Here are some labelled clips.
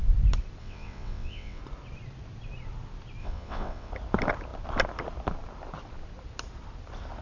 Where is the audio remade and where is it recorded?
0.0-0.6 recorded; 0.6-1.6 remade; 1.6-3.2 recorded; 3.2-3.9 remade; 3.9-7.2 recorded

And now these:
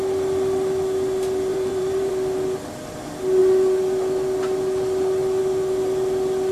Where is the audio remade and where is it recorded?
0.0-1.5 recorded; 1.5-2.1 remade; 2.1-6.5 recorded

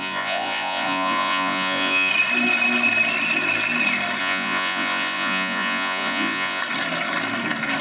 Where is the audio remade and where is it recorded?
0.0-2.1 remade; 2.1-4.2 recorded; 4.2-6.6 remade; 6.6-7.8 recorded

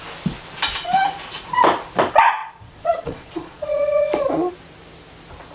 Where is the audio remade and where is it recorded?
0.0-2.4 recorded; 2.4-4.5 remade; 4.5-5.5 recorded

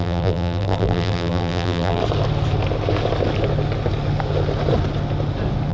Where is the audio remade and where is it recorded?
0.0-2.0 remade; 2.0-5.7 recorded

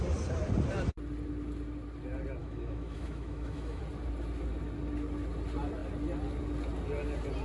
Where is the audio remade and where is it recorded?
0.0-2.4 recorded; 2.4-3.8 remade; 3.8-7.4 recorded

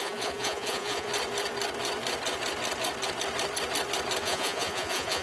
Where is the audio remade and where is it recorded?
0.0-1.1 remade; 1.1-4.2 recorded; 4.2-5.2 remade